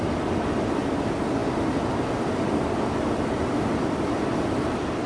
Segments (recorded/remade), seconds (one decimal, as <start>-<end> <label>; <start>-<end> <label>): 0.0-5.1 recorded